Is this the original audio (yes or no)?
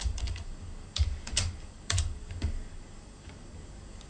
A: no